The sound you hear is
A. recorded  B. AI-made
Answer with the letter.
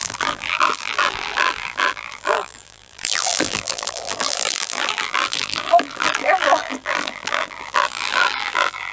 B